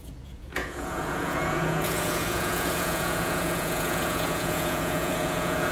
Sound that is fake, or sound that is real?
fake